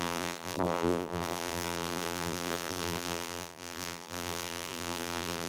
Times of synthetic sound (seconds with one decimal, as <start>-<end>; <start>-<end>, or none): 0.0-5.5